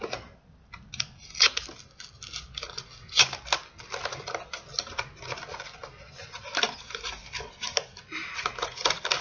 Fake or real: real